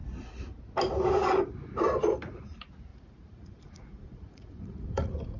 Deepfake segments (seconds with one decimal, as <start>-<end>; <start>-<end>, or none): 2.9-5.4